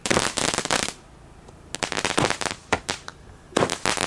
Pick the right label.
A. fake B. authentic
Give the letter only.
B